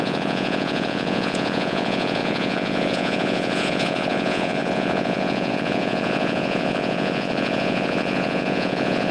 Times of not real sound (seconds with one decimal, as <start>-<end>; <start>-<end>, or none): 0.0-9.1